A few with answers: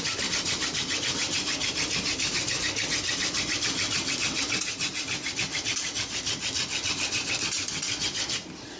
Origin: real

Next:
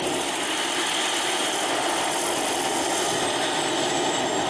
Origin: real